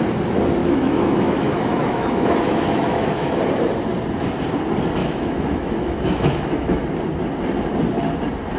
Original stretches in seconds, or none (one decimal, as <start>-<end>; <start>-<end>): 0.0-0.6; 3.4-5.0; 6.8-8.6